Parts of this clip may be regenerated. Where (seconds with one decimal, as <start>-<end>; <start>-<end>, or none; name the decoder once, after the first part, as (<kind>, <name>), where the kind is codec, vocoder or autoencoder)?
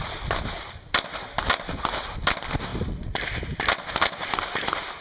none